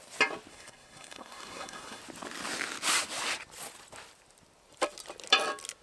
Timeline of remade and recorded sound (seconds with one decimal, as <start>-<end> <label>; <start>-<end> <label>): 0.0-0.5 recorded; 0.5-2.0 remade; 2.0-5.8 recorded